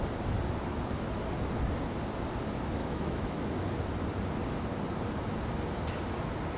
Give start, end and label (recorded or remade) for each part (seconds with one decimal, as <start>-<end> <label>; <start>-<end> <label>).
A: 0.0-2.8 recorded; 2.8-3.5 remade; 3.5-6.6 recorded